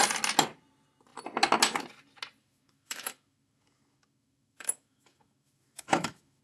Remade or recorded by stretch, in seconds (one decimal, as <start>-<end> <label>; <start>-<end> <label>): 0.0-2.4 recorded; 2.4-6.4 remade